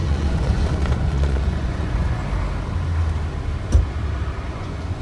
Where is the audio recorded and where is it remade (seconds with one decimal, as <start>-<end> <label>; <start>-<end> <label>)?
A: 0.0-2.2 remade; 2.2-4.5 recorded; 4.5-5.0 remade